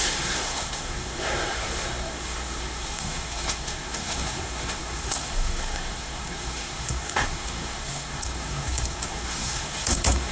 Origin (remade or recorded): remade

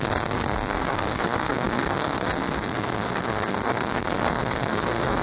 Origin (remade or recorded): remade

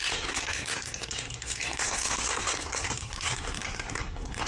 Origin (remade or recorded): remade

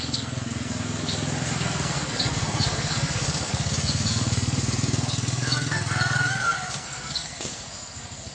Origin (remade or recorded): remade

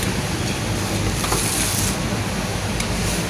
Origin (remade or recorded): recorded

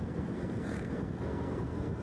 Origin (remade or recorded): remade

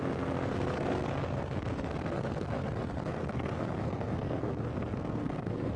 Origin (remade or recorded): remade